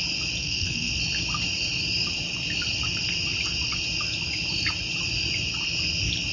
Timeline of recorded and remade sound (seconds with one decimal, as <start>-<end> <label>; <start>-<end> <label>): 0.0-0.4 recorded; 0.4-0.9 remade; 0.9-6.3 recorded